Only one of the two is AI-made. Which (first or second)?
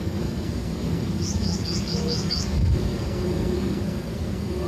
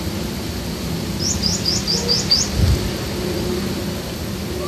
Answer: first